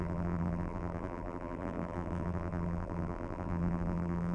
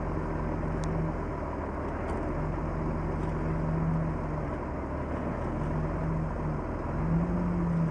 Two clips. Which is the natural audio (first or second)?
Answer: second